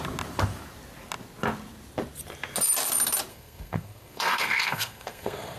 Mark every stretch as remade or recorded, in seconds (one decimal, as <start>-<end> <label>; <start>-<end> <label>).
0.0-3.3 recorded; 3.3-5.6 remade